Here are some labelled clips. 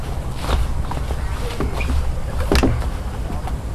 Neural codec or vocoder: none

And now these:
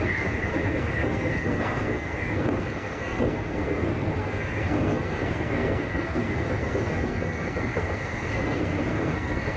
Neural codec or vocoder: codec, SNAC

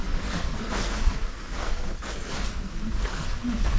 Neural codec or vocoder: codec, SNAC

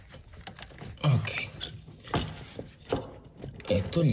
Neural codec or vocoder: none